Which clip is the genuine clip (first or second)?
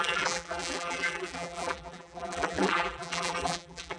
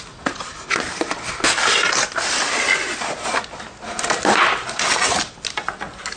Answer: second